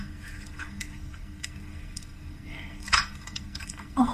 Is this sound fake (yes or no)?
yes